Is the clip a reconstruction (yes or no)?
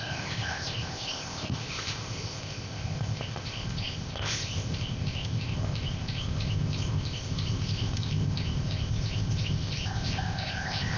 yes